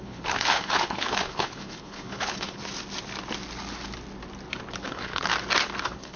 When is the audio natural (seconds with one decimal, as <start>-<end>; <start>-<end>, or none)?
2.6-4.8; 5.3-5.8

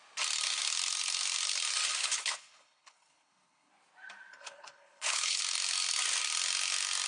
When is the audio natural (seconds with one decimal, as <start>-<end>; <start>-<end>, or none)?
0.0-2.0; 3.7-4.3; 5.4-7.1